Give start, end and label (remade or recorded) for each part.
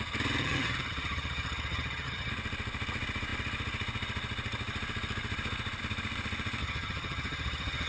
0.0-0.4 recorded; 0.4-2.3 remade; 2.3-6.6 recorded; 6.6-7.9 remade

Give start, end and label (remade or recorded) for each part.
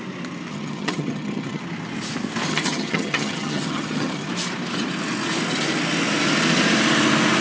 0.0-0.5 recorded; 0.5-1.6 remade; 1.6-2.5 recorded; 2.5-4.3 remade; 4.3-7.4 recorded